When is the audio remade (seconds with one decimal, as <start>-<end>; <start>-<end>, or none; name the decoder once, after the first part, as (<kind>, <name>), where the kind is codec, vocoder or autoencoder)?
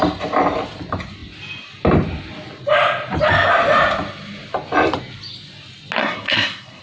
6.0-6.8 (codec, SNAC)